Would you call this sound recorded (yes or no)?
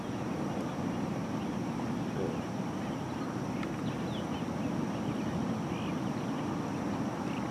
yes